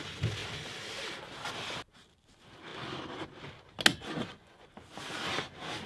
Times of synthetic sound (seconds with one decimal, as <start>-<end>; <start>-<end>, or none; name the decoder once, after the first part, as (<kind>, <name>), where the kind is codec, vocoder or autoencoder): 3.9-4.7 (vocoder, Vocos)